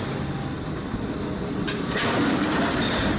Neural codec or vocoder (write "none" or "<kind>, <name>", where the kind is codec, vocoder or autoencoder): none